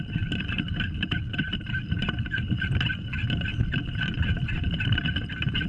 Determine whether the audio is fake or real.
fake